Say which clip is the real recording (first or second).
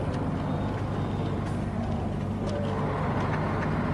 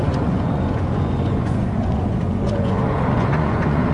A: first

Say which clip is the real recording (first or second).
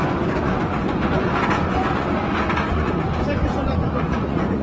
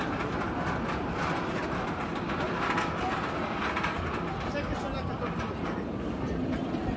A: second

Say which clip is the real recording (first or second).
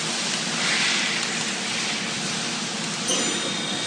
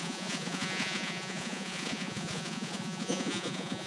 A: first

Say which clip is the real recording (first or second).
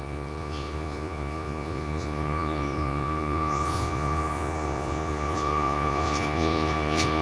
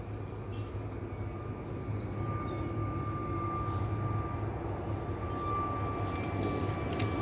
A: second